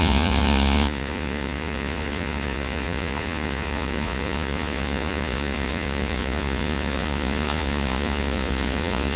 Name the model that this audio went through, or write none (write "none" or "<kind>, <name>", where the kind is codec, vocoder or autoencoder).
vocoder, Vocos